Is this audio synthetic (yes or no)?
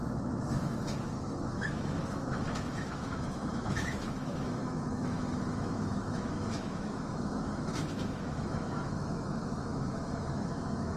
yes